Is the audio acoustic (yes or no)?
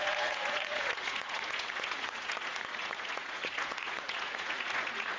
no